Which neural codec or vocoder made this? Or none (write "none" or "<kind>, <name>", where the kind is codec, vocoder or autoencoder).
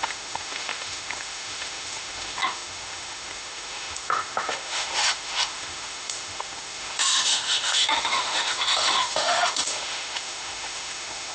autoencoder, DAC-VAE